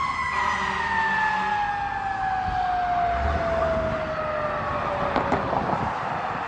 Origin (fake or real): real